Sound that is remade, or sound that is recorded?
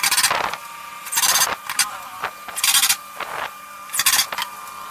recorded